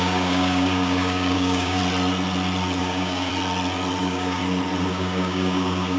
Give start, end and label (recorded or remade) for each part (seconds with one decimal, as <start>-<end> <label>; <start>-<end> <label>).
0.0-1.8 remade; 1.8-2.8 recorded; 2.8-3.3 remade; 3.3-4.0 recorded; 4.0-4.4 remade; 4.4-4.9 recorded; 4.9-6.0 remade